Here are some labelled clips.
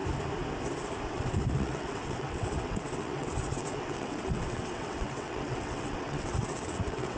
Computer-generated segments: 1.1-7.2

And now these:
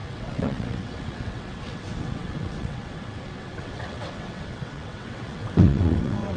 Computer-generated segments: 0.0-6.4